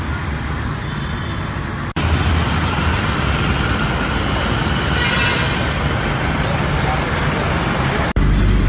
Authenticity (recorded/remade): recorded